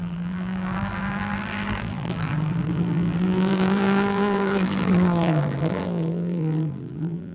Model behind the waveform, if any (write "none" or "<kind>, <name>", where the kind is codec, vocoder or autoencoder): vocoder, BigVGAN v2